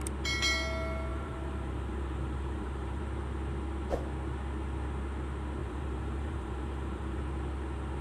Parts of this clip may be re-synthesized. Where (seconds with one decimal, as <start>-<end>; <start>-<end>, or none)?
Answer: 1.1-3.0; 5.6-7.2